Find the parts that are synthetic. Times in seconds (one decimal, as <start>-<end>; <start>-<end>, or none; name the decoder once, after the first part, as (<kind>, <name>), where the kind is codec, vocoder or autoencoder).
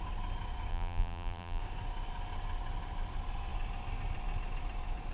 0.7-1.6 (vocoder, BigVGAN v2)